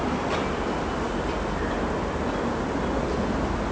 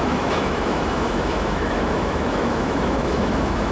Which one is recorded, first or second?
first